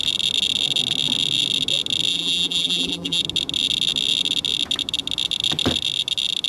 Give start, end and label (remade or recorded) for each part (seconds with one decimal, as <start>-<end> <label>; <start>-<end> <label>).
0.0-2.1 recorded; 2.1-3.2 remade; 3.2-6.5 recorded